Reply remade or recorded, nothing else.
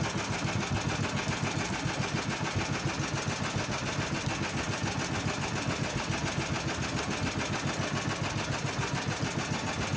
recorded